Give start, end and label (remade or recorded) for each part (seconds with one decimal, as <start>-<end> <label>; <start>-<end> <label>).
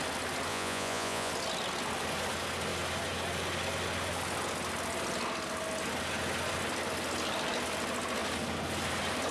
0.0-0.5 recorded; 0.5-1.3 remade; 1.3-9.3 recorded